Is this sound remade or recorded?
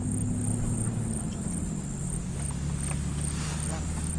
recorded